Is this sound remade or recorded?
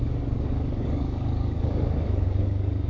remade